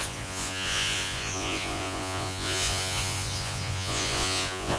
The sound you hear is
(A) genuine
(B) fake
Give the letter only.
B